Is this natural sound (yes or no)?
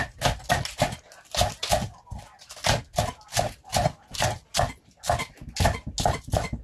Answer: yes